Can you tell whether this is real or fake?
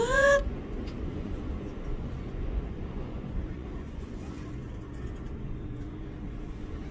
fake